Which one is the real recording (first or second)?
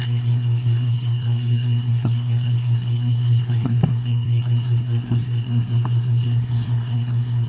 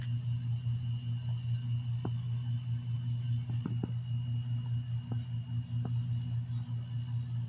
second